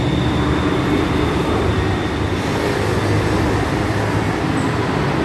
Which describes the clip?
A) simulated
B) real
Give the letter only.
B